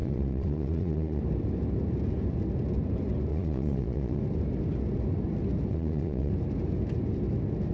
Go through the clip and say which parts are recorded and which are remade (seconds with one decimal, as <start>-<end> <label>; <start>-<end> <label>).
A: 0.0-1.2 remade; 1.2-3.3 recorded; 3.3-4.2 remade; 4.2-5.7 recorded; 5.7-6.3 remade; 6.3-7.7 recorded